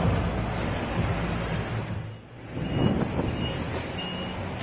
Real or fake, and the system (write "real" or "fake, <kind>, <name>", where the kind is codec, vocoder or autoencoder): real